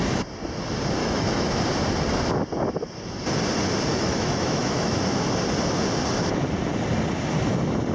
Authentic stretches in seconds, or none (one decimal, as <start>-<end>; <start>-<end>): 0.0-1.0; 1.5-3.9; 5.0-7.9